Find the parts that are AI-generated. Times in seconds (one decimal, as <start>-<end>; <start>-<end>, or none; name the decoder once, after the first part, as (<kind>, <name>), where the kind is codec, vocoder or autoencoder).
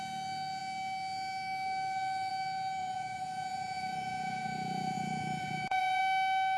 2.8-6.0 (vocoder, Vocos)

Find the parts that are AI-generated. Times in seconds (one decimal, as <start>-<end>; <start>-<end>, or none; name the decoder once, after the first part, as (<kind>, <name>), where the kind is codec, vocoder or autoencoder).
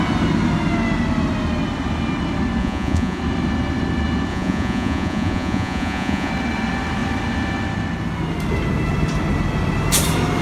2.6-3.2 (vocoder, Vocos); 4.3-6.3